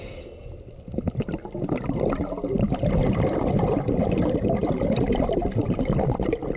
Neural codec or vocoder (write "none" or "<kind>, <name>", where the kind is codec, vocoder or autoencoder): none